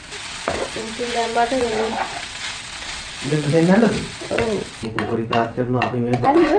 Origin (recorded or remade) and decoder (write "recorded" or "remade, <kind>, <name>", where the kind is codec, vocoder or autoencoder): remade, vocoder, WaveNeXt